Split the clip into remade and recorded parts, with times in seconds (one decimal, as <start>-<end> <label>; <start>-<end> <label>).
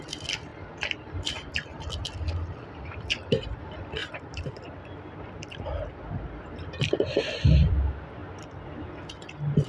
0.0-0.5 remade; 0.5-1.8 recorded; 1.8-8.2 remade; 8.2-9.1 recorded; 9.1-9.7 remade